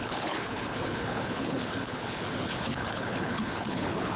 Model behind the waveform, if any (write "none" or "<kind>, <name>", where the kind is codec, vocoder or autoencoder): codec, HILCodec